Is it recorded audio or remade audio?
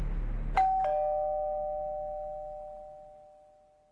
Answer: recorded